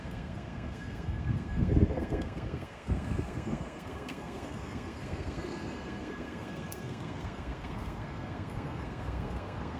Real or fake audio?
fake